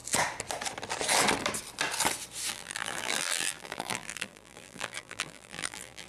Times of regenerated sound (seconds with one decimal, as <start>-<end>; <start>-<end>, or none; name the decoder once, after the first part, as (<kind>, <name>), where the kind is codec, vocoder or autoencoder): 2.5-6.1 (vocoder, BigVGAN v2)